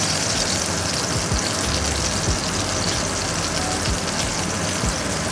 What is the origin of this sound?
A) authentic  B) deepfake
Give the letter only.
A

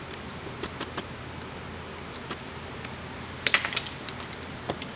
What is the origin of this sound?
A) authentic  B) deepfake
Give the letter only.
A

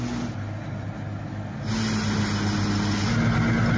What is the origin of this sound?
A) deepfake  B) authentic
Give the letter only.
B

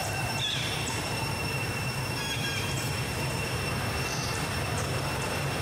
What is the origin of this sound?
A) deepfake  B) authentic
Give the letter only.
A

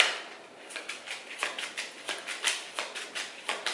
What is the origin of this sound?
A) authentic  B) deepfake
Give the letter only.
B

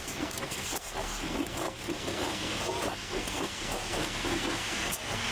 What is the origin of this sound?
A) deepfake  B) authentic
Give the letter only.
A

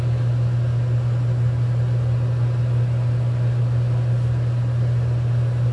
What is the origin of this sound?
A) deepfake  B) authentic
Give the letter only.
B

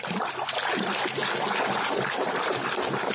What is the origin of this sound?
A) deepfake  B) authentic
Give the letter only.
B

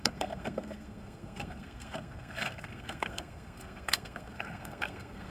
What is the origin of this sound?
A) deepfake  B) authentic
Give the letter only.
A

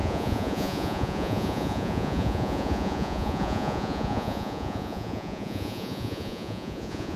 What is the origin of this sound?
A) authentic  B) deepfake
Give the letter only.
B